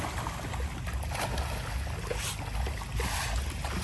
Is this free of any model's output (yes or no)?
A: yes